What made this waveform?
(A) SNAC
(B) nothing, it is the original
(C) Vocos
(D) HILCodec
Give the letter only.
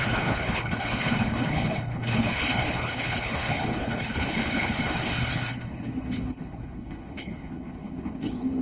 D